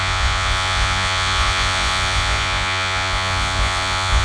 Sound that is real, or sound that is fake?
fake